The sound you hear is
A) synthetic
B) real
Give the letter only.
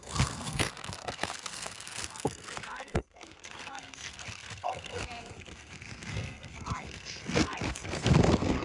A